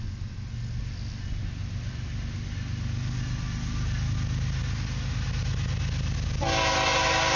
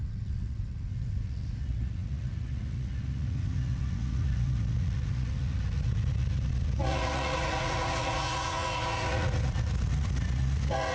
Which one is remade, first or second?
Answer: second